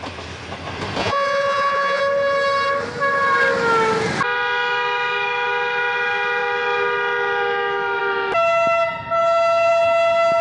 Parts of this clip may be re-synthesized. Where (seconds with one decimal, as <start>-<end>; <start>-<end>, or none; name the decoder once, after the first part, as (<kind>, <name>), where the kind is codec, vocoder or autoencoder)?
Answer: 1.0-2.0 (vocoder, Vocos)